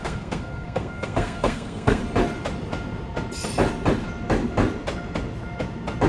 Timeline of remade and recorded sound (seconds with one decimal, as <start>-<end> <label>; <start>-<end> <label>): 0.0-2.0 remade; 2.0-6.1 recorded